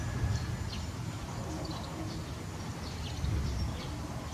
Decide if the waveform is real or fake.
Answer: real